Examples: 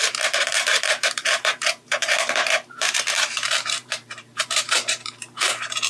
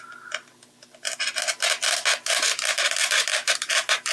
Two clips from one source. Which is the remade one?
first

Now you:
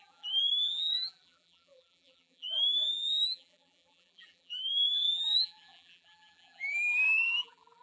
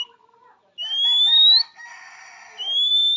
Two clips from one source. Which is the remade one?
first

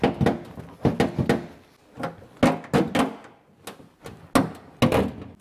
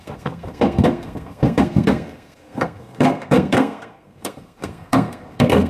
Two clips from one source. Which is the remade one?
second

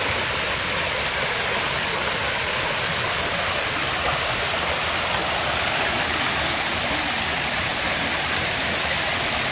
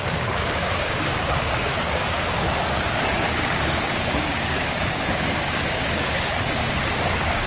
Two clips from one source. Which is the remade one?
second